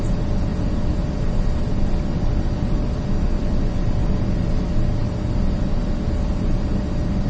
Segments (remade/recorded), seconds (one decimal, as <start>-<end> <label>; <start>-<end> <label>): 0.0-7.3 recorded